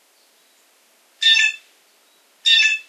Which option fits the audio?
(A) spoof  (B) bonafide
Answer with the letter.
B